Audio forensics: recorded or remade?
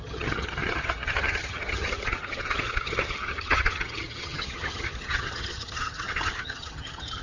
remade